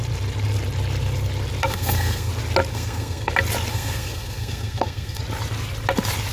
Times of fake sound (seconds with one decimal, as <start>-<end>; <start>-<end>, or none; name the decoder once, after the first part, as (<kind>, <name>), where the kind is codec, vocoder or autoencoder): 1.6-2.3 (codec, SNAC); 2.7-3.3; 3.7-5.2